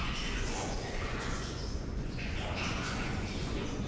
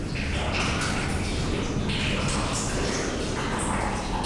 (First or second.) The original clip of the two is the second